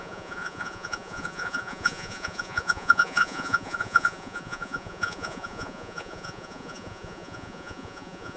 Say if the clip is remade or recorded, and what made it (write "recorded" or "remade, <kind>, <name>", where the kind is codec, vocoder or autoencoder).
remade, vocoder, Vocos